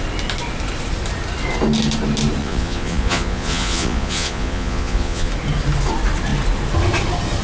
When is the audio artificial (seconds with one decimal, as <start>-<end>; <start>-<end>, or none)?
2.4-5.3